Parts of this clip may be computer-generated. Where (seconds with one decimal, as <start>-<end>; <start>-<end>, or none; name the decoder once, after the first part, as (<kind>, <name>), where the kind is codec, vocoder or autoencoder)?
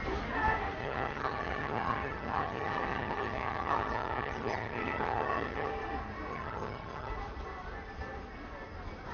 0.8-5.7 (vocoder, HiFi-GAN); 6.3-7.1